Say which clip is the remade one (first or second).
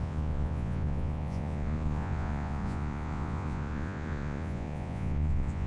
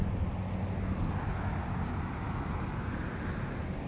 first